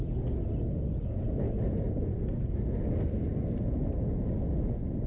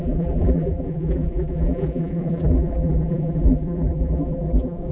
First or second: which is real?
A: first